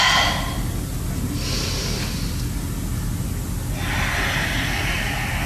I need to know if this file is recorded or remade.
recorded